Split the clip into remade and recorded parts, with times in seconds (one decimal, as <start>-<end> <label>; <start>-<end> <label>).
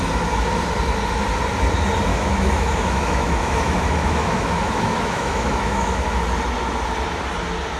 0.0-2.1 recorded; 2.1-6.2 remade; 6.2-7.8 recorded